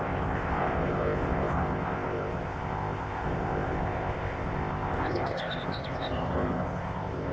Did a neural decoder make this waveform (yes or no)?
yes